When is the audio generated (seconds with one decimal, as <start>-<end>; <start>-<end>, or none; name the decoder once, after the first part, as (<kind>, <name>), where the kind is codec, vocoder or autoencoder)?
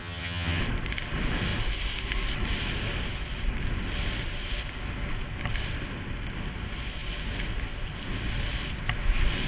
0.0-0.6 (vocoder, HiFi-GAN)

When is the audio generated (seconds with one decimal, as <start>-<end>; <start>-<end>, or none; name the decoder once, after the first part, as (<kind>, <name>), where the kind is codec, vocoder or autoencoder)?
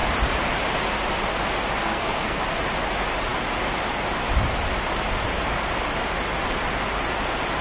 1.8-2.4 (codec, SNAC)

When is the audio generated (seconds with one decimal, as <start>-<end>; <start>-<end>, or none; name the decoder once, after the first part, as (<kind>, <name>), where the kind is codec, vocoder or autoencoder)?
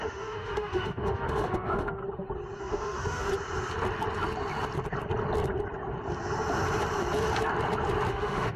0.0-2.0 (autoencoder, DAC-VAE); 2.6-3.3; 8.1-8.6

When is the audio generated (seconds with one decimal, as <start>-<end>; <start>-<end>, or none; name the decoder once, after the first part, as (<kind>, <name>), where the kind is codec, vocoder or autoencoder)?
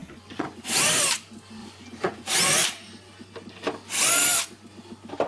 0.0-0.7 (vocoder, Vocos); 1.6-2.4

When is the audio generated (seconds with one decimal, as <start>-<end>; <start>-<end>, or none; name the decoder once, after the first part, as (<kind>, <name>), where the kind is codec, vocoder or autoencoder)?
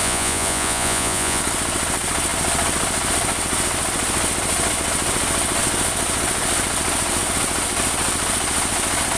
0.0-1.4 (vocoder, Vocos)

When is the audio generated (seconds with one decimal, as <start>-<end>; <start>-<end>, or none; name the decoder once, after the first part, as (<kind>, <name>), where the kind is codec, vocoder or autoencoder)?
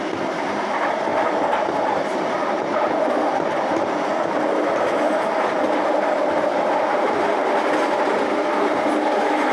none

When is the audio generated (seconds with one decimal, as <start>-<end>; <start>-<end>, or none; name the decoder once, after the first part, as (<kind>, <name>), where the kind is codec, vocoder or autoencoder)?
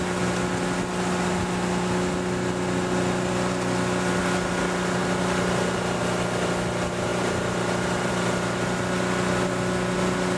none